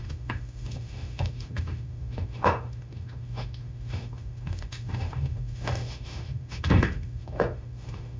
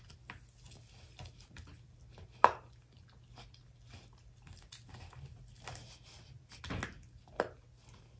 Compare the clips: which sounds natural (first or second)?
second